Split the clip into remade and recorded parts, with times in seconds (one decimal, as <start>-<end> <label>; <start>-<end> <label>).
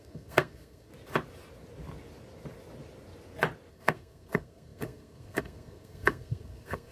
0.0-0.9 remade; 0.9-3.7 recorded; 3.7-6.9 remade